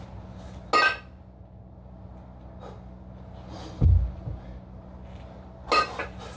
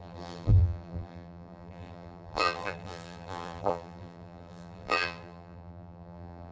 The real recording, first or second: first